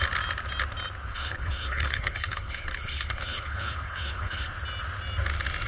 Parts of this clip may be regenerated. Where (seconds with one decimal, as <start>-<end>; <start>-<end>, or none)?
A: 1.1-4.5